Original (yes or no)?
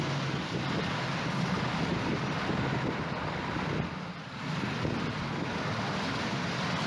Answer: yes